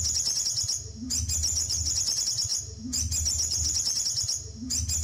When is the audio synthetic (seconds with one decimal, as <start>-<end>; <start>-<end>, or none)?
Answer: none